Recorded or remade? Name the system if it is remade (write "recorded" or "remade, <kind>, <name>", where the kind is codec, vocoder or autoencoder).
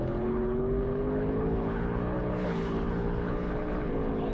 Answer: remade, codec, HILCodec